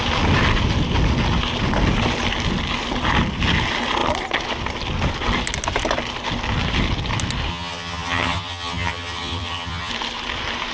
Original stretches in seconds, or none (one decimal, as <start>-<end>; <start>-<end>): 0.0-7.5; 9.9-10.7